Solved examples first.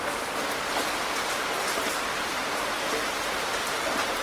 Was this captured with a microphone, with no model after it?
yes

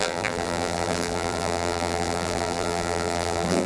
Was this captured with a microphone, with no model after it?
no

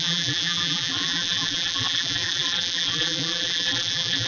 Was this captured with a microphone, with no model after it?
no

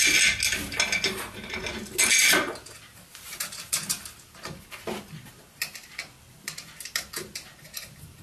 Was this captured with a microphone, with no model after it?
yes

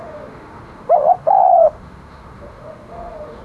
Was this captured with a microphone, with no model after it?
no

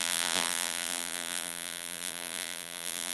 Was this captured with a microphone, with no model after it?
no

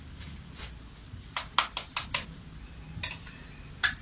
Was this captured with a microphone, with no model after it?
yes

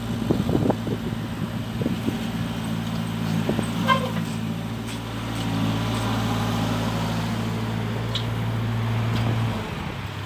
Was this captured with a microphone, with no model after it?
yes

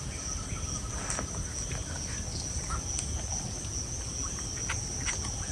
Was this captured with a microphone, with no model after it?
yes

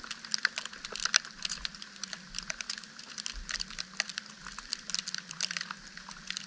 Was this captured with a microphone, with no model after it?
yes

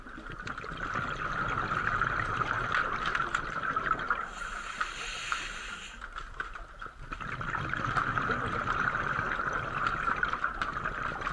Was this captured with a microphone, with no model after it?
yes